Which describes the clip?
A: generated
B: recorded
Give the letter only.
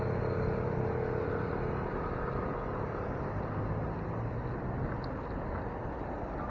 B